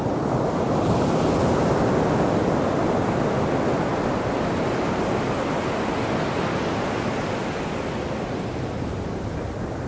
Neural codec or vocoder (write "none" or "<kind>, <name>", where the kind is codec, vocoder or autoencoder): none